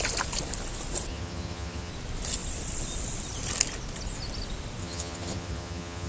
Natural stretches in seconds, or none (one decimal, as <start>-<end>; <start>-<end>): 0.0-1.1; 1.9-4.8